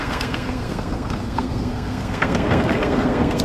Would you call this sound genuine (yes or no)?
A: no